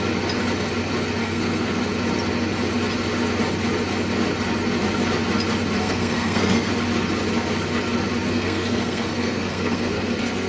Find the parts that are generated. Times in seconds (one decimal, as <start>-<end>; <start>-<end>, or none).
1.2-1.8; 5.8-6.7; 8.3-10.5

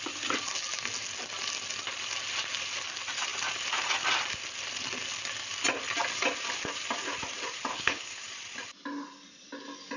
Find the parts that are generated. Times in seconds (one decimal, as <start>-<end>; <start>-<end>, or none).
7.7-8.2